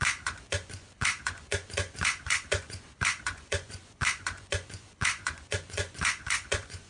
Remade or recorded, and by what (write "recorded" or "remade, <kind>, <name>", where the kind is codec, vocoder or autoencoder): remade, vocoder, Vocos